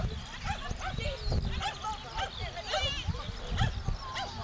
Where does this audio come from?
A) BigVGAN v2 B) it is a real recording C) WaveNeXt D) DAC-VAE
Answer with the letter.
B